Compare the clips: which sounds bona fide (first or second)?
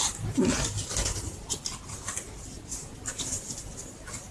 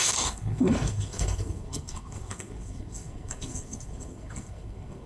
first